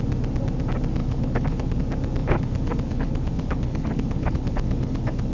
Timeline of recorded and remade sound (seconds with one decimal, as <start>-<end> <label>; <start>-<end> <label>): 0.0-1.0 recorded; 1.0-1.8 remade; 1.8-2.2 recorded; 2.2-5.3 remade